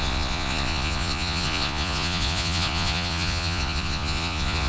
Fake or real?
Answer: fake